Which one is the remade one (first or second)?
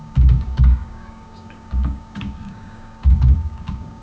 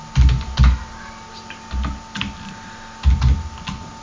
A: first